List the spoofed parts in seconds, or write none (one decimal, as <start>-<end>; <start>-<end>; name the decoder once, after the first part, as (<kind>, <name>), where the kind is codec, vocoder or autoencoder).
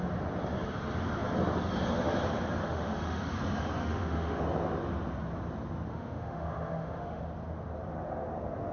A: 2.6-3.3 (autoencoder, DAC-VAE); 3.8-4.4; 5.9-7.2